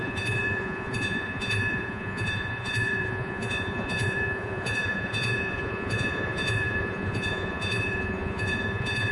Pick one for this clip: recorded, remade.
remade